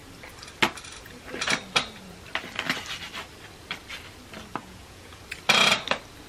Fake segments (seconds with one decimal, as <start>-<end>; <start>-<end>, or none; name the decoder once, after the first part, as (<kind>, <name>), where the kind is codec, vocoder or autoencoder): 4.6-5.2 (vocoder, Vocos)